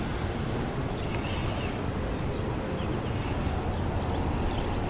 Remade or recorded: recorded